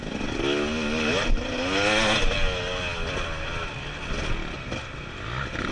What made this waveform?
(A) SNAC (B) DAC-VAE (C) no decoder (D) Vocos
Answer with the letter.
C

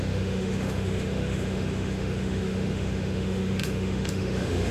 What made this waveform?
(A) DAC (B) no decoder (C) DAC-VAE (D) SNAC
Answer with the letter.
C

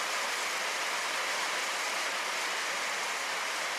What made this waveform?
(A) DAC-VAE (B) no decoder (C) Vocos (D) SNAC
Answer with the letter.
B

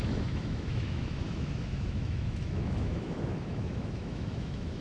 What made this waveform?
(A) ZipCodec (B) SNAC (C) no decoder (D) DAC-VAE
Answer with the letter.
D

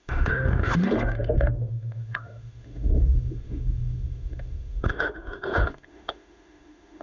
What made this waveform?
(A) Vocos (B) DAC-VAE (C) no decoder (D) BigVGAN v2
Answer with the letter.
B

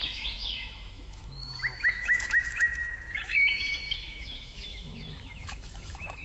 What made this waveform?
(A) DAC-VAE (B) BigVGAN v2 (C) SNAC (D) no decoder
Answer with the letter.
A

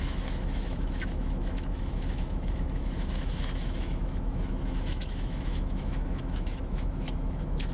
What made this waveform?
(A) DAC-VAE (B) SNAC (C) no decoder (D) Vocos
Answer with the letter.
A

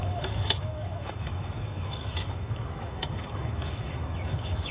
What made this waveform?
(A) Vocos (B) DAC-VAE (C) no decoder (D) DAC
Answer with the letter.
B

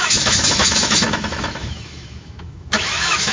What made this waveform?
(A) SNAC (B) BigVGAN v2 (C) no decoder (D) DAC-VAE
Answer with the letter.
D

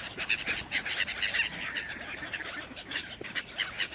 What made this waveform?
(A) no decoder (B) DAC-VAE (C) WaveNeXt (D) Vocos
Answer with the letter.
A